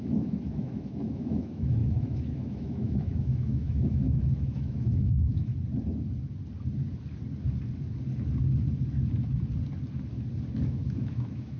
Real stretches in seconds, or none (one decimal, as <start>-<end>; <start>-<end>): 5.5-10.7